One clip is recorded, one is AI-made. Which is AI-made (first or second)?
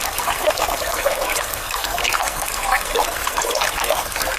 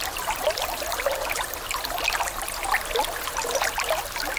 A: first